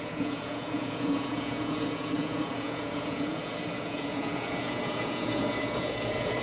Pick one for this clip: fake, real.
fake